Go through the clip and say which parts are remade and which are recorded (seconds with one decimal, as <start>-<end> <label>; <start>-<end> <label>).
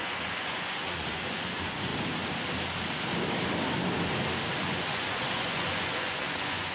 0.0-1.9 remade; 1.9-4.6 recorded; 4.6-6.7 remade